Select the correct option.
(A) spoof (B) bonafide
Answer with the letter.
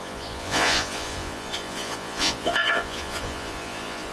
A